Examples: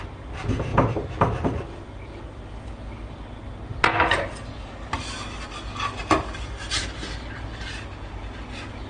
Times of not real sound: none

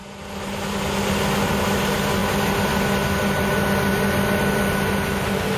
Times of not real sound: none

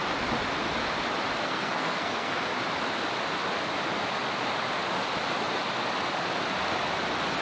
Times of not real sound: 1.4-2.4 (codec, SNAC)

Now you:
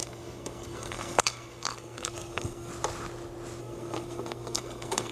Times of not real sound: 0.0-2.7 (codec, SNAC); 3.6-5.1

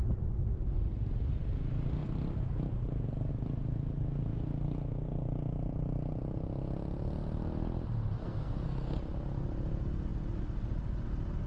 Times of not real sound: 8.2-9.0 (codec, SNAC)

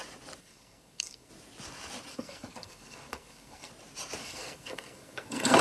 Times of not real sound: 0.4-1.3 (codec, SNAC); 2.1-3.7; 4.2-5.6

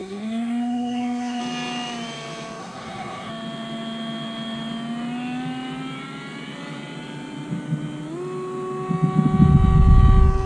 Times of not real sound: 0.0-1.4 (codec, SNAC); 2.6-3.3